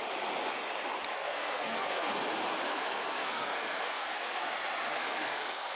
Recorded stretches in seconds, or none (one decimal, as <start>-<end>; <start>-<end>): 0.0-1.1; 2.1-2.7; 4.5-4.9